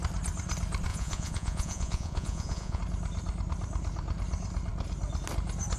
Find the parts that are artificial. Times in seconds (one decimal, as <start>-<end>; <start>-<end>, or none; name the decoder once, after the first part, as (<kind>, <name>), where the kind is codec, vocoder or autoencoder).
0.9-2.8 (vocoder, Vocos)